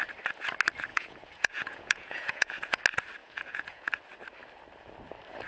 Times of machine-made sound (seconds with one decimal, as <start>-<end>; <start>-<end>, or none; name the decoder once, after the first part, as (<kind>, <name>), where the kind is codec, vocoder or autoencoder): 0.9-2.8 (vocoder, Vocos); 3.2-3.9

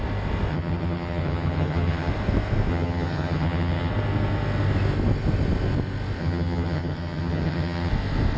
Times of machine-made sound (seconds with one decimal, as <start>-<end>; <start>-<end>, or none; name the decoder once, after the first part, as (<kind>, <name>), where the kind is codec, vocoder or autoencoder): 0.5-2.1 (vocoder, HiFi-GAN); 2.7-3.9; 6.2-7.9

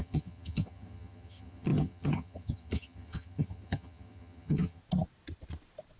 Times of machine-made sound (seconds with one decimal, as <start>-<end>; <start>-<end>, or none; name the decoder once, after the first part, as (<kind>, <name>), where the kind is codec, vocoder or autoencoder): 0.0-4.8 (vocoder, HiFi-GAN)